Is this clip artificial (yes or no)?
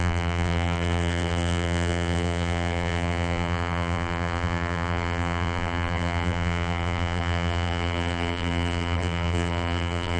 yes